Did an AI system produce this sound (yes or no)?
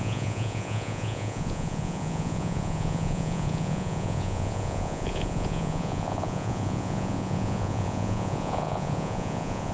yes